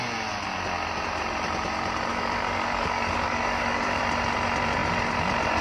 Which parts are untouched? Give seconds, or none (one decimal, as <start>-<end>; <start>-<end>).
0.0-2.1; 4.0-5.6